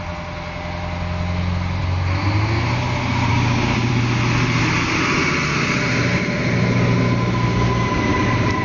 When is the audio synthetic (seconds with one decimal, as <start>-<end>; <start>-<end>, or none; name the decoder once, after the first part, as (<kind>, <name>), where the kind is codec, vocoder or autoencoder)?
3.3-3.9 (codec, DAC)